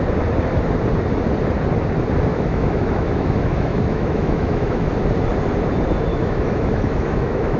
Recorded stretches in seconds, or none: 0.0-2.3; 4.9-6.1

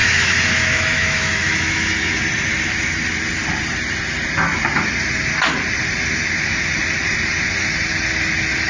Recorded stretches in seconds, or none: 2.2-8.7

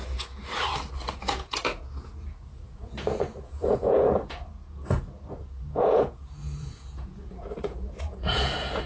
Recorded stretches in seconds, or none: 0.0-1.1

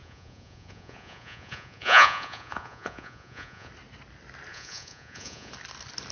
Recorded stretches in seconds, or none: 3.7-4.5; 5.5-6.1

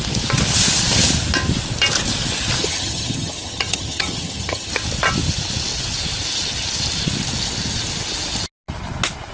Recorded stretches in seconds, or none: 0.0-2.6; 4.7-9.3

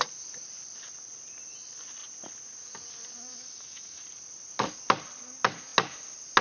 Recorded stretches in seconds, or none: 0.0-3.3; 4.0-6.4